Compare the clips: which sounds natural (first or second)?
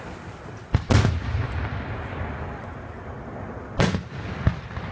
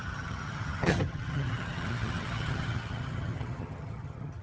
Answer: first